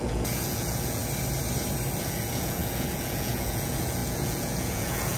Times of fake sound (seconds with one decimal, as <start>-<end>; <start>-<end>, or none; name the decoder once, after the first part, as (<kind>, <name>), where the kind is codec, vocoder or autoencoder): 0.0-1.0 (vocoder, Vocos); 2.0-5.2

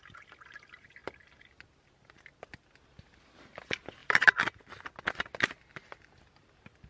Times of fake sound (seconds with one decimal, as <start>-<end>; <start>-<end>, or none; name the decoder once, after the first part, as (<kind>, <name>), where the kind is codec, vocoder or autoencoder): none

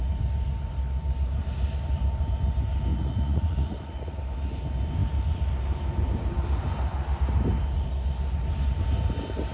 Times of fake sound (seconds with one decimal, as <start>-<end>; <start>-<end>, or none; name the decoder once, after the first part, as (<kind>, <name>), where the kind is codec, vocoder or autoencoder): 2.9-4.2 (vocoder, Vocos)

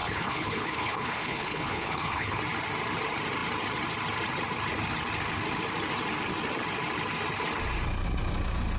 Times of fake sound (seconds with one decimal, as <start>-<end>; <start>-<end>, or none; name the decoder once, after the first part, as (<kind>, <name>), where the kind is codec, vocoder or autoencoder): 0.0-2.4 (codec, HILCodec)